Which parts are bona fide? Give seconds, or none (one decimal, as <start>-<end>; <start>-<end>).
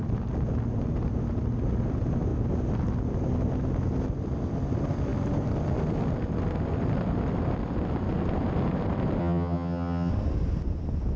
0.0-9.2; 10.1-11.2